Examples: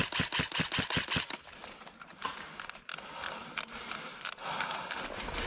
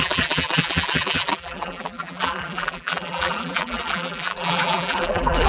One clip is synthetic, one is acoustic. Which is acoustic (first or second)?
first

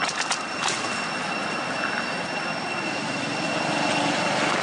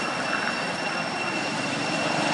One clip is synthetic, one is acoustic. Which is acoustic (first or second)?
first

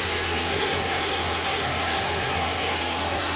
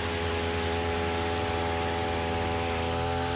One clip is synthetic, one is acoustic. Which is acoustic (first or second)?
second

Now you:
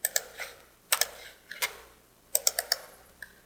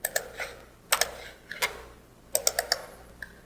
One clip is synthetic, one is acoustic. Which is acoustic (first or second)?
second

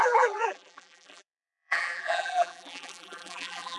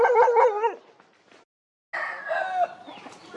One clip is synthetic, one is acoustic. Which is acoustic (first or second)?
second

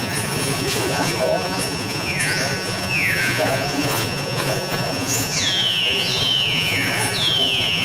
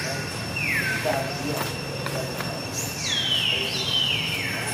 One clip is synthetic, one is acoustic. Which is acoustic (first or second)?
second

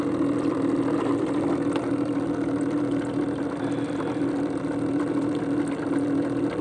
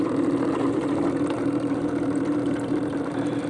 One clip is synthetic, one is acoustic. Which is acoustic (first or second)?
first